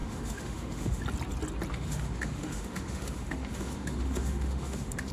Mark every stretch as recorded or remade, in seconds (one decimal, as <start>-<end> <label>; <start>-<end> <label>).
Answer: 0.0-1.0 remade; 1.0-1.7 recorded; 1.7-5.1 remade